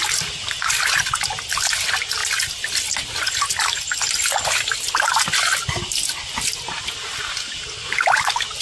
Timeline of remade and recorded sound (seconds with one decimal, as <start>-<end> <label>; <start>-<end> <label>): 0.0-8.6 recorded